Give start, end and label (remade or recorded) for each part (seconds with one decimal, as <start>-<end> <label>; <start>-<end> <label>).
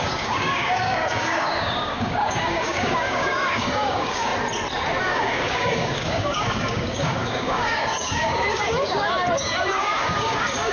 0.0-4.3 remade; 4.3-5.0 recorded; 5.0-10.7 remade